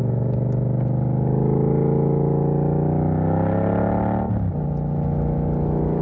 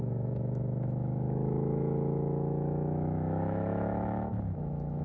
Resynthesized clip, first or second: second